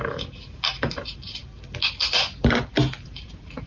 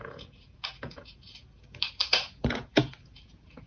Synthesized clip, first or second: second